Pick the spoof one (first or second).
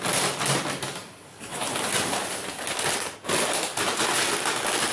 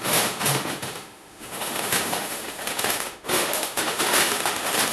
second